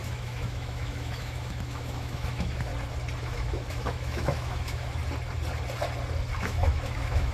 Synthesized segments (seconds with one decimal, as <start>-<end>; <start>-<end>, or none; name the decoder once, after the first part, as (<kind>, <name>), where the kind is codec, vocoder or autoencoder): 0.0-2.7 (autoencoder, DAC-VAE); 3.2-5.0; 6.4-7.3